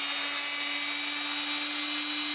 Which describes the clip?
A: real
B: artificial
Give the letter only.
A